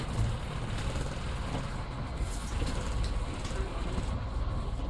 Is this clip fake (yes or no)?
no